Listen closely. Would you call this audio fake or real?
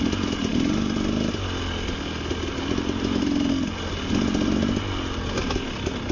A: real